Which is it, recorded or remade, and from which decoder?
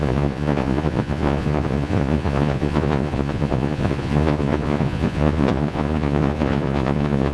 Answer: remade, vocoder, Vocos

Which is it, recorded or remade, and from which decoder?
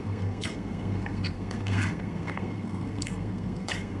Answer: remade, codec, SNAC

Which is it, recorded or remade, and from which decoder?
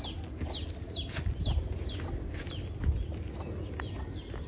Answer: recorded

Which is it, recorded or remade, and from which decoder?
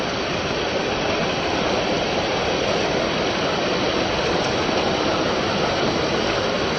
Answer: recorded